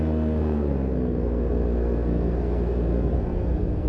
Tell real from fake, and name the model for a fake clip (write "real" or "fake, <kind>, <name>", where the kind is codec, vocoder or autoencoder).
fake, codec, SNAC